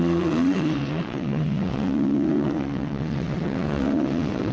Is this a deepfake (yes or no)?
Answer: yes